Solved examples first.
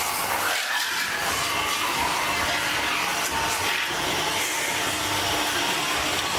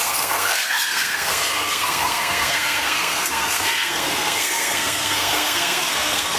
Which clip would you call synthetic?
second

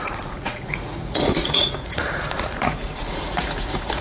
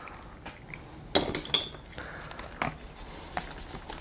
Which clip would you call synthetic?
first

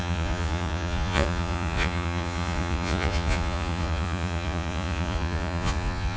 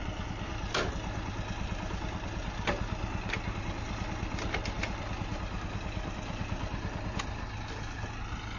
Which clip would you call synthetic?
first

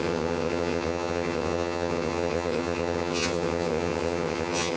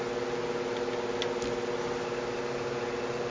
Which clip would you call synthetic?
first